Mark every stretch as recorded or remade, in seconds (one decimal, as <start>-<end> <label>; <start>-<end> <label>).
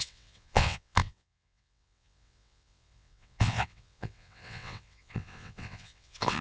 0.0-6.4 remade